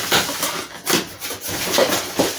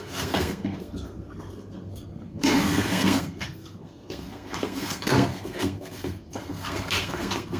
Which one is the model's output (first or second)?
second